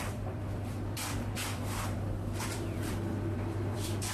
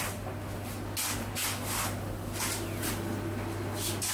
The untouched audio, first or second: second